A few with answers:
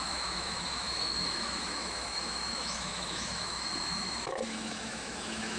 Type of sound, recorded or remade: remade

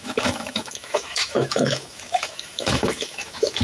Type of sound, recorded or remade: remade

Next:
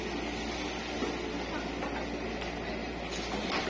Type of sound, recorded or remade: recorded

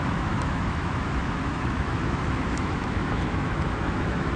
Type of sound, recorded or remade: remade